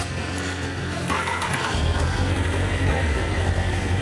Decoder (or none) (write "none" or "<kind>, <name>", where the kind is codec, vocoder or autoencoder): codec, SNAC